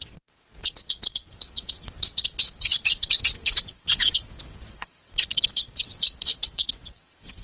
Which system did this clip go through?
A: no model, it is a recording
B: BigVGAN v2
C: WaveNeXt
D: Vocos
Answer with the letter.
C